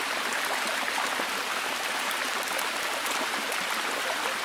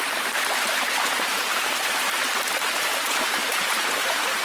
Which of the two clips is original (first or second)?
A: first